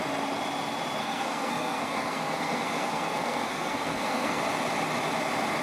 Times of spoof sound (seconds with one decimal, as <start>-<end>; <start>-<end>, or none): 1.0-4.4